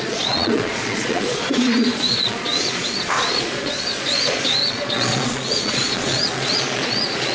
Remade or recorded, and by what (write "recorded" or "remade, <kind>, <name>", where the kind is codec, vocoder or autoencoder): remade, vocoder, Vocos